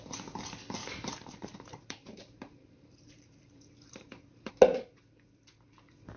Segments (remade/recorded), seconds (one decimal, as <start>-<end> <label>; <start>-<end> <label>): 0.0-0.8 recorded; 0.8-4.5 remade; 4.5-6.2 recorded